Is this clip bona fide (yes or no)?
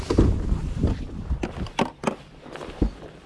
no